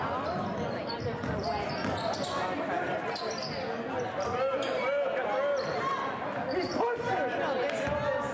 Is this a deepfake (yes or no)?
no